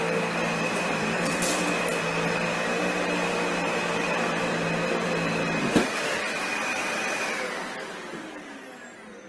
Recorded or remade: recorded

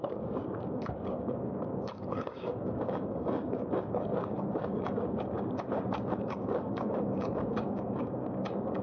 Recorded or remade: remade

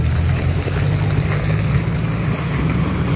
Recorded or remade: recorded